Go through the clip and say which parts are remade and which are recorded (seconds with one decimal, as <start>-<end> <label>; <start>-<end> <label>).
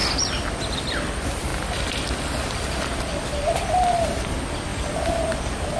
0.0-0.9 remade; 0.9-1.5 recorded; 1.5-2.8 remade; 2.8-5.8 recorded